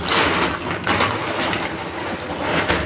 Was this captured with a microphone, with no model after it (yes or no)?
yes